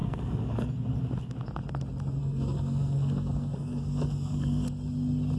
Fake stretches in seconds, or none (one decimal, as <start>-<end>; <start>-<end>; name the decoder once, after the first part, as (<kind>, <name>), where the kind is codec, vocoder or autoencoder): 0.0-0.7 (codec, SNAC); 2.2-4.7